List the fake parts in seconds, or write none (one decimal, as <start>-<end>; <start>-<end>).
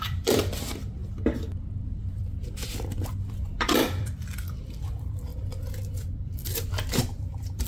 0.0-5.3; 6.4-7.7